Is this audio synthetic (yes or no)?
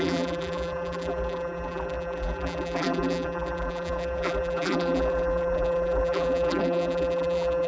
yes